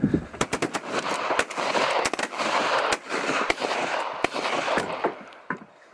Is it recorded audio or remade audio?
recorded